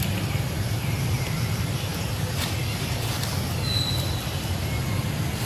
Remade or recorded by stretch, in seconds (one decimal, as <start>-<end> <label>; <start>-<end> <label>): 0.0-5.5 recorded